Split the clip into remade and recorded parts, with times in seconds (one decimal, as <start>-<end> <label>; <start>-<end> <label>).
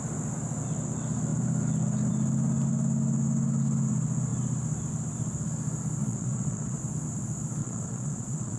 0.0-6.0 recorded; 6.0-6.8 remade; 6.8-7.6 recorded; 7.6-8.6 remade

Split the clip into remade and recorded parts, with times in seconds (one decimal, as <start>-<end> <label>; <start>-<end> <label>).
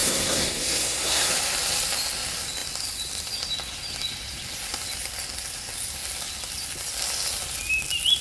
0.0-1.3 remade; 1.3-8.2 recorded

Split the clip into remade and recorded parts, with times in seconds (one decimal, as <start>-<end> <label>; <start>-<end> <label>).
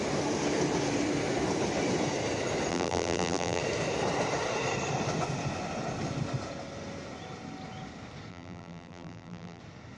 0.0-2.7 recorded; 2.7-3.6 remade; 3.6-8.3 recorded; 8.3-9.6 remade; 9.6-10.0 recorded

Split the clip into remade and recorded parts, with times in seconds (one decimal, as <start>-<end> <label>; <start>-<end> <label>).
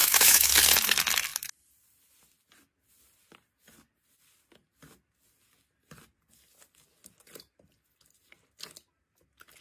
0.0-0.5 remade; 0.5-9.6 recorded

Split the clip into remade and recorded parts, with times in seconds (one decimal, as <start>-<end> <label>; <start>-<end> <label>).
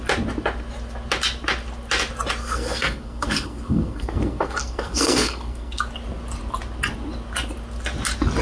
0.0-2.4 recorded; 2.4-5.8 remade; 5.8-8.4 recorded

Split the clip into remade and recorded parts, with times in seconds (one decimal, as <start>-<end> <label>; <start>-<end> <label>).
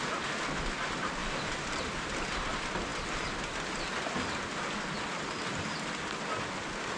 0.0-1.2 recorded; 1.2-2.3 remade; 2.3-7.0 recorded